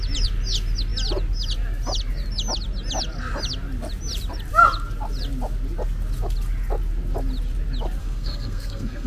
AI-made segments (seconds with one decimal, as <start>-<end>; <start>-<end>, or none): 8.0-9.1